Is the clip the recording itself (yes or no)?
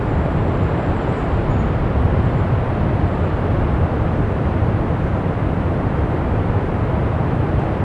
no